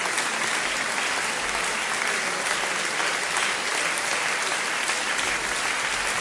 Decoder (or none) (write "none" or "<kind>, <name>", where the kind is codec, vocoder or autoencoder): none